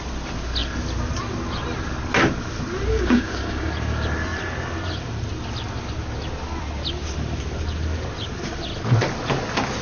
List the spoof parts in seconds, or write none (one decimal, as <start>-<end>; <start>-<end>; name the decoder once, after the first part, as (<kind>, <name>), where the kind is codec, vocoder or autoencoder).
2.9-3.7 (codec, DAC)

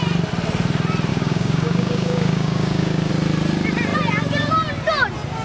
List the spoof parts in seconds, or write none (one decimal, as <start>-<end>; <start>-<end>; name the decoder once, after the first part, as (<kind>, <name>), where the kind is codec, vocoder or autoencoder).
1.1-3.1 (codec, DAC)